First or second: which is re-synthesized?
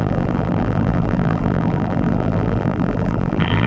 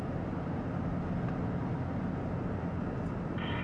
first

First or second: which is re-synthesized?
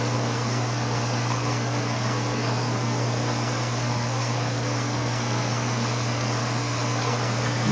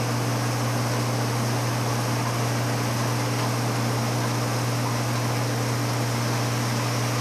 first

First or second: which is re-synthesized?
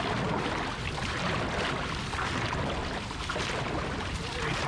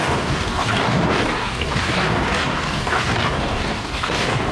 second